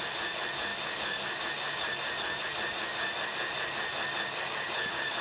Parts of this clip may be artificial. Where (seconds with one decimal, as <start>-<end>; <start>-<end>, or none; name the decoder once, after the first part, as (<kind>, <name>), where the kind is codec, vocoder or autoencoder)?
none